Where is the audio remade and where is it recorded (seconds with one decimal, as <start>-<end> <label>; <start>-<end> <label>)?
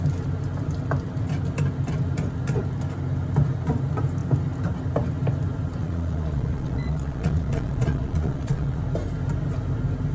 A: 0.0-5.8 recorded; 5.8-8.8 remade; 8.8-10.1 recorded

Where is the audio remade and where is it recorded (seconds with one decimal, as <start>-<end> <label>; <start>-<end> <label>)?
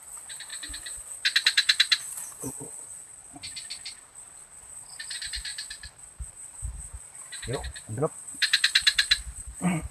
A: 0.0-0.5 recorded; 0.5-2.5 remade; 2.5-5.5 recorded; 5.5-9.9 remade